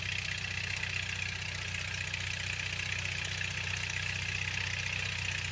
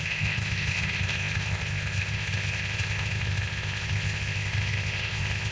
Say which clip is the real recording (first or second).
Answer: first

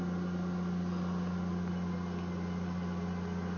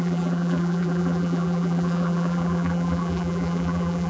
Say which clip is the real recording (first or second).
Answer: first